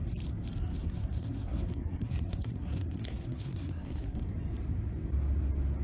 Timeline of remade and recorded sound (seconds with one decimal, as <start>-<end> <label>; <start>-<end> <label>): 0.0-0.8 recorded; 0.8-4.2 remade; 4.2-5.8 recorded